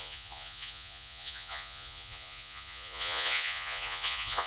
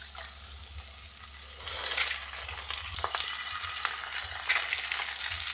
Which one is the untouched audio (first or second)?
second